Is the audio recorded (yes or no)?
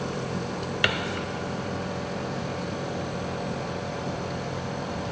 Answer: no